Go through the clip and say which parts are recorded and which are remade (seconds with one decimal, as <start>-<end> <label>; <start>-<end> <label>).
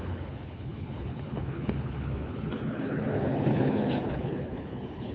0.0-5.1 remade